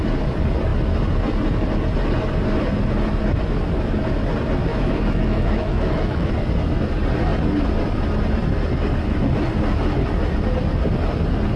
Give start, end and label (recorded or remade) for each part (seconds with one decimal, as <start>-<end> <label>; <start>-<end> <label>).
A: 0.0-4.7 recorded; 4.7-6.3 remade; 6.3-11.6 recorded